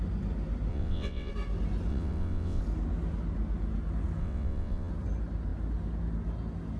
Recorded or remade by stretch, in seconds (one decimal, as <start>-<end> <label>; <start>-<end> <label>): 0.0-0.7 recorded; 0.7-1.3 remade; 1.3-1.9 recorded; 1.9-2.6 remade; 2.6-4.2 recorded; 4.2-4.9 remade; 4.9-6.8 recorded